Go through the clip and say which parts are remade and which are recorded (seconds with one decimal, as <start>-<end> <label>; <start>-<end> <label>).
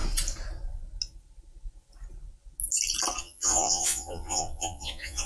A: 0.0-3.2 recorded; 3.2-5.3 remade